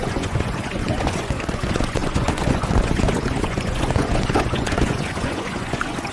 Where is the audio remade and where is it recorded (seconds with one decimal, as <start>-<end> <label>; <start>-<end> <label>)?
0.0-6.1 remade